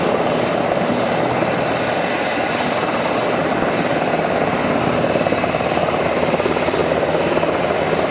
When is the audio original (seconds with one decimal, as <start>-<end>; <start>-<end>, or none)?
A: 0.0-8.1